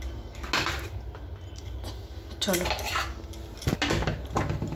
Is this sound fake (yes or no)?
no